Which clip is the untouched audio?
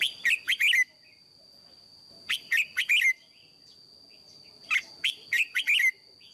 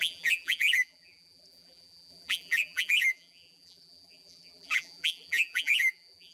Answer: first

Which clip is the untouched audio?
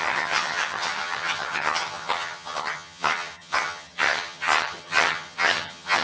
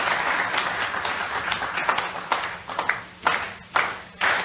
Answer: second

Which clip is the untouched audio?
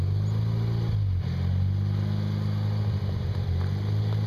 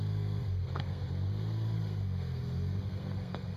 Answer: first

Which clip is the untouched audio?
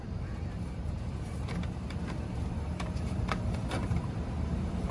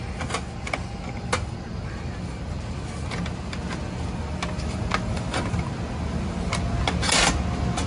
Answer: second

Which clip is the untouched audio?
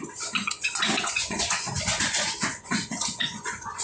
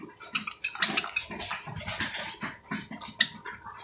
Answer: second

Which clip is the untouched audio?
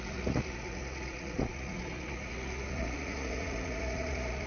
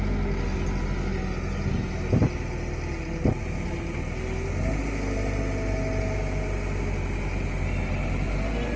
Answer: second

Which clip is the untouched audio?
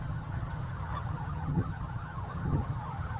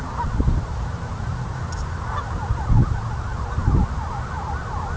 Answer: second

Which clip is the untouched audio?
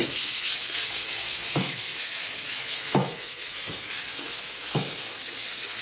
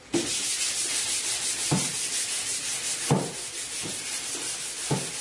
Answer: second